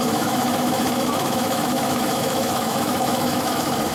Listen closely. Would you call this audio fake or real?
fake